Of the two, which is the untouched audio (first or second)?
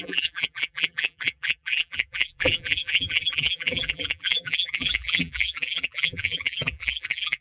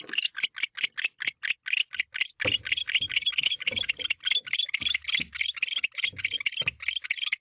second